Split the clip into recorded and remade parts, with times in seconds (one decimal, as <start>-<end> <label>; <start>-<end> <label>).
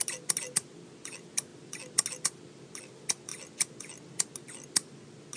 0.0-5.4 recorded